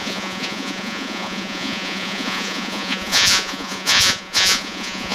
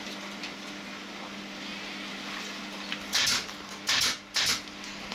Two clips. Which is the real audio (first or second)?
second